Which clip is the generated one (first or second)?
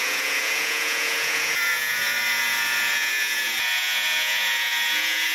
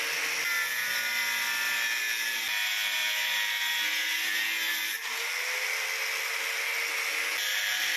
first